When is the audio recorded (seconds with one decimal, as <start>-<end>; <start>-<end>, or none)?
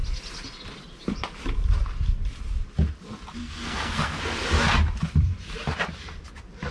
0.0-3.4; 4.2-6.7